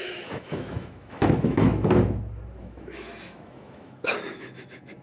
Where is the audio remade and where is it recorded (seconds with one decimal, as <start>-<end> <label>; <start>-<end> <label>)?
0.0-1.7 remade; 1.7-2.6 recorded; 2.6-5.0 remade